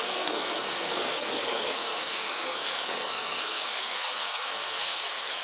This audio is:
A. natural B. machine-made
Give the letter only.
B